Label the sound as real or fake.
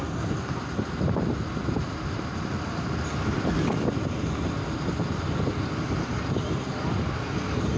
real